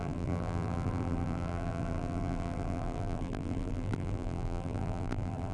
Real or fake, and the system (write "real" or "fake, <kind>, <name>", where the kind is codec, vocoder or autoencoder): fake, vocoder, BigVGAN v2